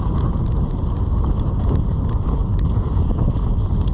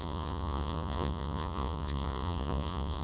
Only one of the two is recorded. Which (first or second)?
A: first